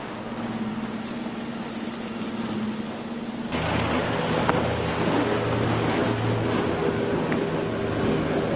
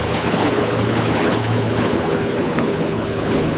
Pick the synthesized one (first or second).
second